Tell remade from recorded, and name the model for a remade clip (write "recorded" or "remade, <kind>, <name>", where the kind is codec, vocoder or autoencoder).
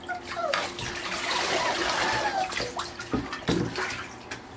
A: recorded